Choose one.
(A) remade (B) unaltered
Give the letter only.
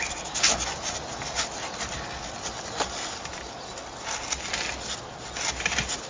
B